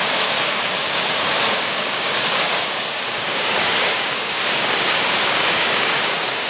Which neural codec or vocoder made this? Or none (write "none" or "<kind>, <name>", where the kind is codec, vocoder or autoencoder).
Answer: codec, DAC